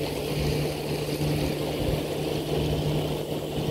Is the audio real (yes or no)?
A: yes